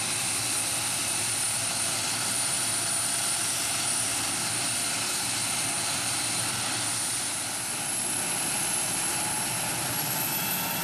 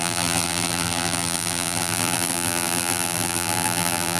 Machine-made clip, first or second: second